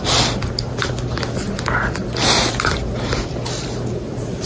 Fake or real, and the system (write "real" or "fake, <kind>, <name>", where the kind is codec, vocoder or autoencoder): real